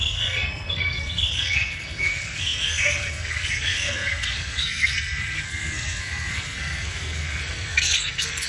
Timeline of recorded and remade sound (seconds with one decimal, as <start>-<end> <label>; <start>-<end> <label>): 0.0-8.5 remade